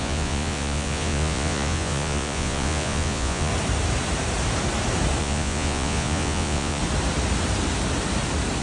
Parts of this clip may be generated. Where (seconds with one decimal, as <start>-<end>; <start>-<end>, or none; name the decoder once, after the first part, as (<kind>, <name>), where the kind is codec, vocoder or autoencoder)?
0.0-3.5 (vocoder, Vocos); 5.2-6.8

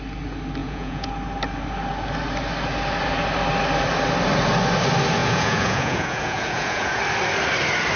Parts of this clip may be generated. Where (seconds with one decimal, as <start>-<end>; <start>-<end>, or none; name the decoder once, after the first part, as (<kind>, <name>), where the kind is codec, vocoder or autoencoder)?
0.6-1.1 (vocoder, Vocos); 5.2-7.0